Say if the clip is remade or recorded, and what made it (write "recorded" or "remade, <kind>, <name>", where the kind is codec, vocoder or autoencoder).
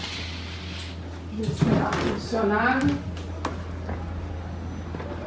recorded